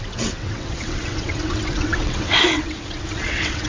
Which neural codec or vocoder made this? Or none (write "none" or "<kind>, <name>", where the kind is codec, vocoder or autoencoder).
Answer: vocoder, WaveNeXt